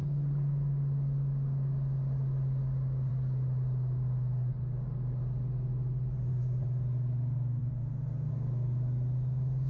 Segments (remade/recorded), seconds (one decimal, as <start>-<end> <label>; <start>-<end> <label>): 0.0-9.7 recorded